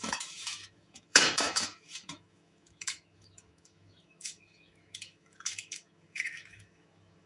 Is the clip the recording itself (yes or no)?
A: no